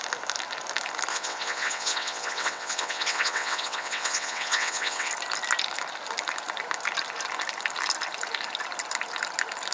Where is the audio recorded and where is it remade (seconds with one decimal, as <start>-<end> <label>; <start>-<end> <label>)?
0.0-1.1 recorded; 1.1-5.1 remade; 5.1-9.7 recorded